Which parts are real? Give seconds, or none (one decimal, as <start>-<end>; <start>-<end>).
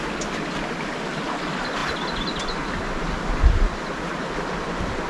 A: 0.0-5.1